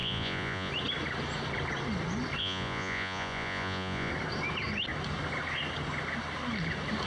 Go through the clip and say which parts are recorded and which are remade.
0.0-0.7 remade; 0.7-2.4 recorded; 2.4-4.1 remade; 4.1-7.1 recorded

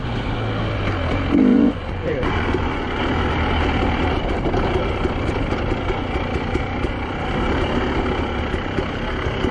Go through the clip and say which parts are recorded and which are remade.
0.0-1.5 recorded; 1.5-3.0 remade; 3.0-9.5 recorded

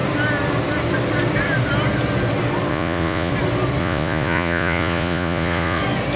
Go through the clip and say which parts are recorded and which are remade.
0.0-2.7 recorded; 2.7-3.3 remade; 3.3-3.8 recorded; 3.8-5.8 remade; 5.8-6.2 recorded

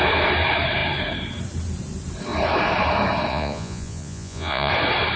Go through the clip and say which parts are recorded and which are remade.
0.0-3.3 recorded; 3.3-4.7 remade; 4.7-5.2 recorded

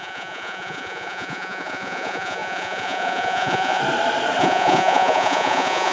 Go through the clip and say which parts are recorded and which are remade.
0.0-3.8 remade; 3.8-4.4 recorded; 4.4-5.9 remade

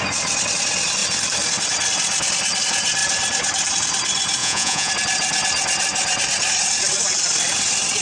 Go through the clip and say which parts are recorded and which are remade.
0.0-4.4 recorded; 4.4-4.9 remade; 4.9-8.0 recorded

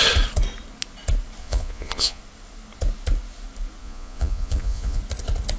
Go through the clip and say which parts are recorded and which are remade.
0.0-1.4 recorded; 1.4-2.2 remade; 2.2-3.8 recorded; 3.8-5.0 remade; 5.0-5.6 recorded

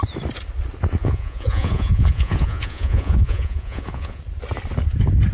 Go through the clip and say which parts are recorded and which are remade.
0.0-1.0 recorded; 1.0-4.2 remade; 4.2-5.3 recorded